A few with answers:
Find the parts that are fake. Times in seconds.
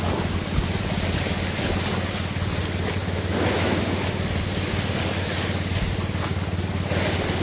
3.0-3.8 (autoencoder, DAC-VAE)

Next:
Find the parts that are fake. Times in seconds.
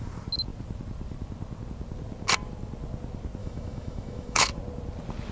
3.4-4.5 (autoencoder, DAC-VAE)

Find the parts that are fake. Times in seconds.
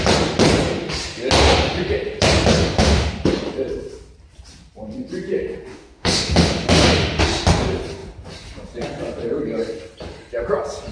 2.6-3.1 (autoencoder, DAC-VAE); 5.7-7.2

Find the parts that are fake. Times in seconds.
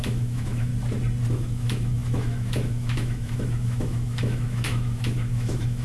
0.0-0.7 (autoencoder, DAC-VAE); 1.3-5.8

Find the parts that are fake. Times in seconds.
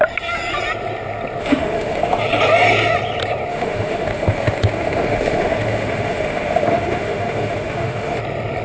1.4-2.2 (autoencoder, DAC-VAE); 3.5-8.2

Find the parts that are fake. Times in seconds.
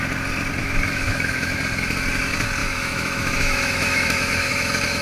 0.6-1.6 (autoencoder, DAC-VAE); 2.6-5.0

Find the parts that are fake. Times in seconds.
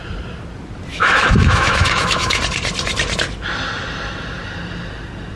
0.9-2.4 (autoencoder, DAC-VAE)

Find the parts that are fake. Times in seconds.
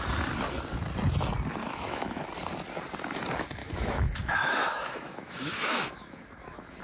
1.6-2.2 (autoencoder, DAC-VAE); 3.6-6.8